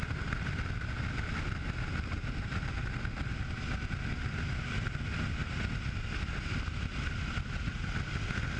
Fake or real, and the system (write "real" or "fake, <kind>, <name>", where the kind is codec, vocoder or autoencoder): real